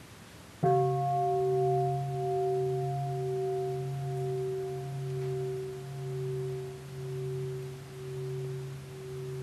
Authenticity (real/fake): real